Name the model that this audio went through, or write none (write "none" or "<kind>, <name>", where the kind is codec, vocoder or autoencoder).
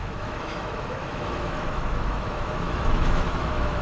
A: autoencoder, DAC-VAE